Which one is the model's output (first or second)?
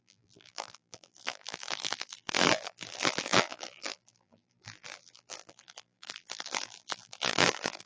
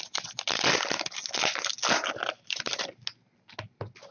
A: first